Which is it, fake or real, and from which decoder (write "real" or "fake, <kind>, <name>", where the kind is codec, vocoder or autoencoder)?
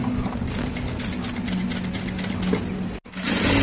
real